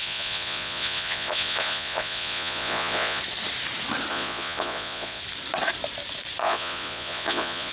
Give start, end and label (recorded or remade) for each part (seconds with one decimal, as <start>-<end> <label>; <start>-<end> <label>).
0.0-3.2 remade; 3.2-4.1 recorded; 4.1-5.2 remade; 5.2-6.4 recorded; 6.4-7.7 remade